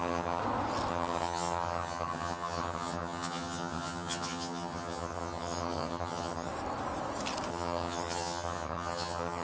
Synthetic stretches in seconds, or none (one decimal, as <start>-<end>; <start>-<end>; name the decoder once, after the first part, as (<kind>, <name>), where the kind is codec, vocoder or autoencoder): 0.0-0.4 (vocoder, HiFi-GAN); 0.9-6.5; 7.5-9.4